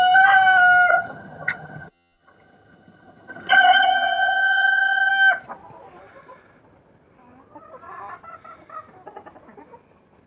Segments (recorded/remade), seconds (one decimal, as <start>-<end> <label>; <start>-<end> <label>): 0.0-0.9 recorded; 0.9-5.1 remade; 5.1-10.3 recorded